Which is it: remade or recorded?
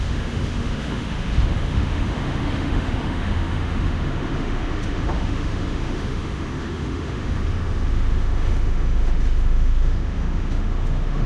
remade